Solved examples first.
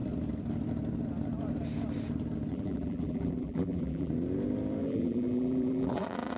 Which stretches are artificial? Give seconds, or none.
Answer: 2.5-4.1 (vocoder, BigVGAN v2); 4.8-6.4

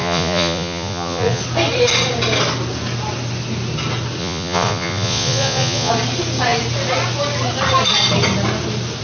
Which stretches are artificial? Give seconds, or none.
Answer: 0.0-1.4 (vocoder, Vocos); 4.2-5.9

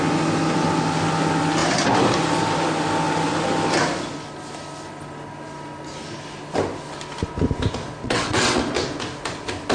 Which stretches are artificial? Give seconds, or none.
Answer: 8.0-8.6 (vocoder, WaveNeXt)

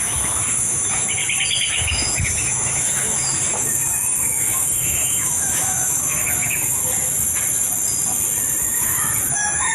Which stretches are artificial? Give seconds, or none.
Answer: 0.0-1.2 (autoencoder, DAC-VAE); 1.7-6.8; 8.6-9.7

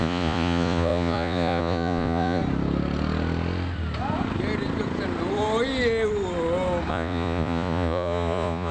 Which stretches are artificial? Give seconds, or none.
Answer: 0.0-2.4 (vocoder, Vocos); 6.9-8.7

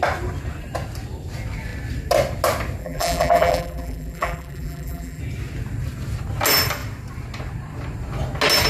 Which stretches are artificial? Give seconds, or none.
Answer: 2.8-5.2 (vocoder, BigVGAN v2)

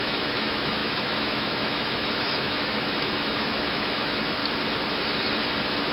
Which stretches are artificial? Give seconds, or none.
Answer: 0.0-4.4 (autoencoder, DAC-VAE)